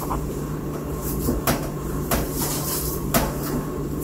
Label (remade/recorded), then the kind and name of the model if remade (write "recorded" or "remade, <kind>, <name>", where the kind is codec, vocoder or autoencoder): remade, vocoder, BigVGAN v2